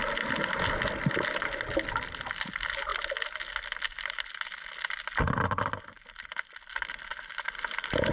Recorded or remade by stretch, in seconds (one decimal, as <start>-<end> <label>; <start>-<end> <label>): 0.0-8.1 recorded